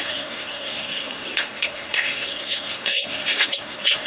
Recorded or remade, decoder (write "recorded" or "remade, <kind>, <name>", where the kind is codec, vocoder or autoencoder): remade, codec, SNAC